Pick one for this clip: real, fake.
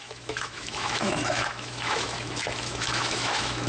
fake